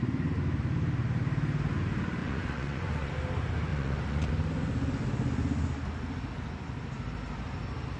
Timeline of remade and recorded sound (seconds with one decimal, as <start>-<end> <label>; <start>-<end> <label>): 0.0-2.2 recorded; 2.2-3.1 remade; 3.1-3.7 recorded; 3.7-4.3 remade; 4.3-8.0 recorded